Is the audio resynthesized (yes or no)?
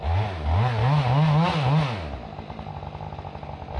no